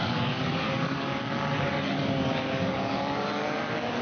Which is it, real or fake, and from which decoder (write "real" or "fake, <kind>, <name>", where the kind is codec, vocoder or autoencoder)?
fake, codec, DAC